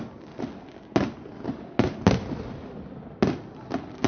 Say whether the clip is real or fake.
real